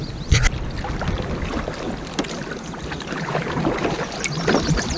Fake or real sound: real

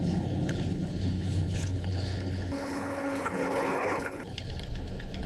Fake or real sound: fake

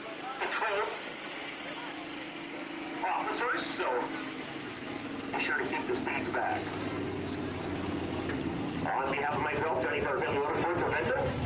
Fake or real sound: real